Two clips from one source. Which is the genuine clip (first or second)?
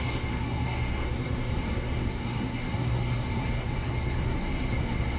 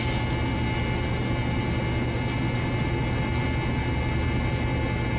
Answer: second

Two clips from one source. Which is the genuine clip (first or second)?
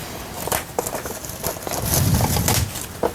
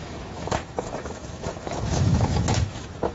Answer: first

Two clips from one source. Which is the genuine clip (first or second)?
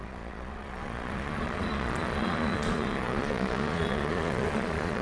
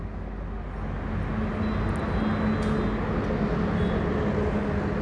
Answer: second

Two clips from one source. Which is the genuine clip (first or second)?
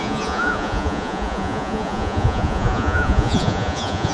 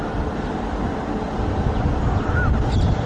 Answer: second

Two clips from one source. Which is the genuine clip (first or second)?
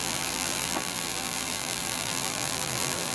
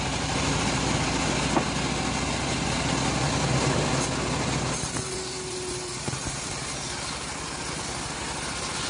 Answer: second